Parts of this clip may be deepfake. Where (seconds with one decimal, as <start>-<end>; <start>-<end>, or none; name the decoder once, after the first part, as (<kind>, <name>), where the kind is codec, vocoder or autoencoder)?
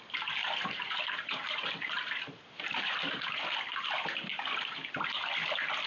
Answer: 0.4-3.4 (vocoder, BigVGAN v2); 4.3-5.3